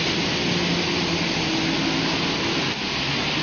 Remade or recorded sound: recorded